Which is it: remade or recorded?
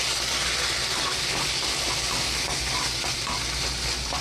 recorded